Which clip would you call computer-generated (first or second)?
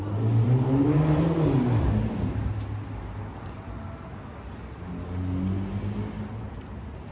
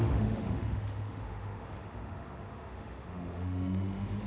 second